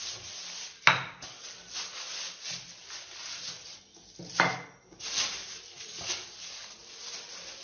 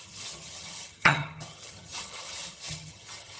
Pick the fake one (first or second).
second